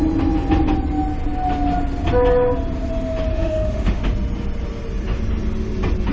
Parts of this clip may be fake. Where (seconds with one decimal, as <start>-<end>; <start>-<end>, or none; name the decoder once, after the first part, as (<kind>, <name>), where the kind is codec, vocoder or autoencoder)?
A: 3.3-4.0 (autoencoder, DAC-VAE)